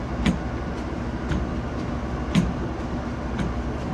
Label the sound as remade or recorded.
recorded